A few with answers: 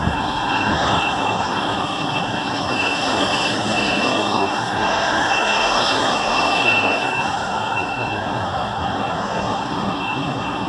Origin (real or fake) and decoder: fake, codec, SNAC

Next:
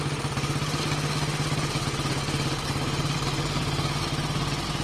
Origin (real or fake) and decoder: real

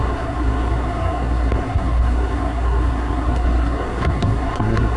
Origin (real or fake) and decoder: fake, codec, SNAC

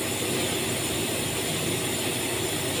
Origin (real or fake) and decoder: real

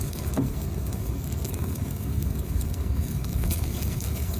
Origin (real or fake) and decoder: fake, codec, SNAC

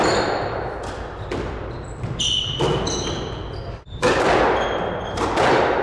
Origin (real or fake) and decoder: real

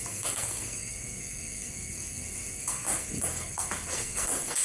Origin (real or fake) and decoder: fake, codec, SNAC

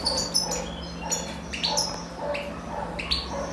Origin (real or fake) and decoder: real